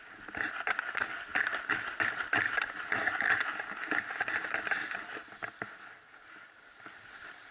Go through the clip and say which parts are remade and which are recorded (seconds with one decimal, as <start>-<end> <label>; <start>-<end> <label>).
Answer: 0.0-7.5 recorded